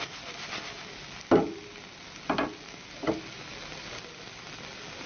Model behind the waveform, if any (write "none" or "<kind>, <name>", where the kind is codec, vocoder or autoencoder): none